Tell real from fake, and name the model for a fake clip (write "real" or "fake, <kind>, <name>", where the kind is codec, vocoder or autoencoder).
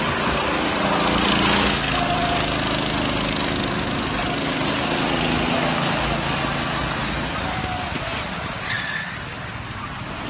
real